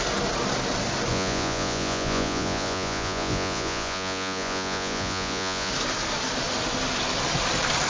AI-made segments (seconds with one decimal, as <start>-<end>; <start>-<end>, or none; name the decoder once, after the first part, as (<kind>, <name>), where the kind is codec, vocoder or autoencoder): 1.1-5.7 (vocoder, Vocos)